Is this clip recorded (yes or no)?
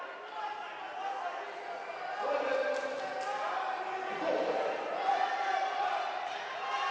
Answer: yes